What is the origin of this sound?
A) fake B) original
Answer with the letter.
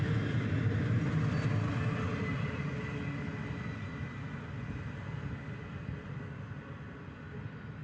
B